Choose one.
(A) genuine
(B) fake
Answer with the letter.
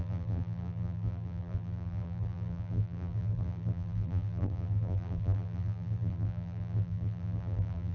B